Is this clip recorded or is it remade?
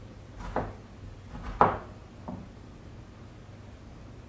recorded